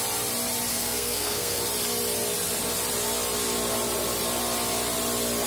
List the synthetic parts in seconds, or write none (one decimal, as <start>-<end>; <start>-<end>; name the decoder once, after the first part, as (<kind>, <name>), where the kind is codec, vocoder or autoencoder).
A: 0.7-1.6 (codec, SNAC)